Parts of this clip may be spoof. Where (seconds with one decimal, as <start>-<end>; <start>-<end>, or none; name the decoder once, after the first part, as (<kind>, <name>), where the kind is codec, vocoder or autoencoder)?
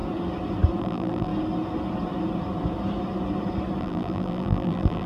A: 0.8-1.3 (vocoder, BigVGAN v2); 3.8-5.1